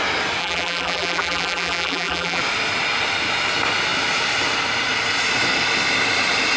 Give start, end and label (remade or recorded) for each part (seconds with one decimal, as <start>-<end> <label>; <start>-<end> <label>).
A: 0.0-0.4 recorded; 0.4-2.4 remade; 2.4-6.6 recorded